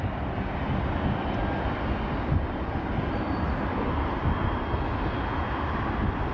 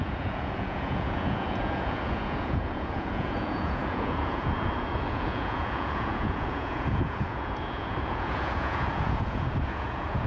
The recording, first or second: first